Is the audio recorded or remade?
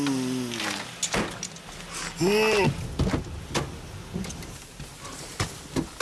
recorded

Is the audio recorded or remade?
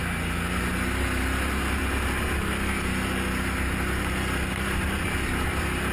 recorded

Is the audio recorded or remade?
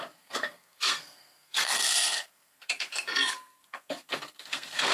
remade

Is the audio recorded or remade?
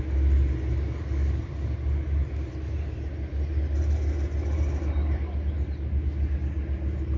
recorded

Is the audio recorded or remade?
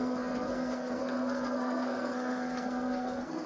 remade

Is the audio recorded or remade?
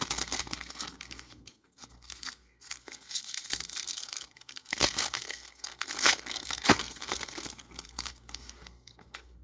remade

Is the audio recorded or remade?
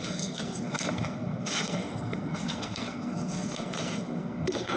remade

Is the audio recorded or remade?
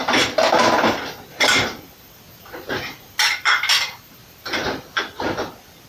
recorded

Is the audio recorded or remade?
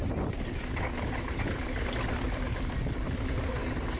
recorded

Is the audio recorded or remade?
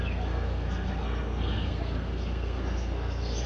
remade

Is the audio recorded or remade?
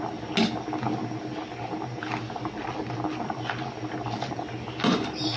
recorded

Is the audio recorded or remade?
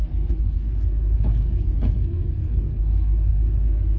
remade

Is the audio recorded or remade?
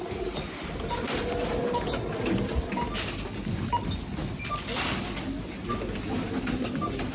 recorded